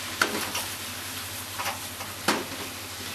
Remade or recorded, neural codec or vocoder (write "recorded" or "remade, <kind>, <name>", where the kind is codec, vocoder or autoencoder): recorded